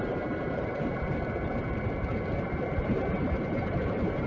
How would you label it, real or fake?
fake